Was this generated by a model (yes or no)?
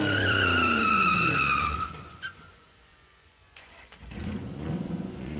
yes